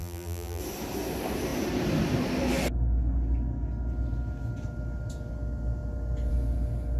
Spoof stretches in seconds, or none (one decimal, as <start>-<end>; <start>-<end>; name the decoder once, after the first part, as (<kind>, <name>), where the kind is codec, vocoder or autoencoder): 0.0-0.6 (vocoder, BigVGAN v2)